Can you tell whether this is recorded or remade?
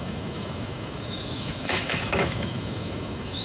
remade